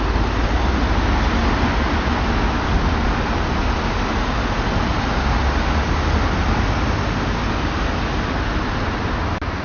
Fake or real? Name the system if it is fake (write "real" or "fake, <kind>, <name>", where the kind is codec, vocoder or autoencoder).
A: real